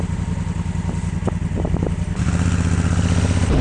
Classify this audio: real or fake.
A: real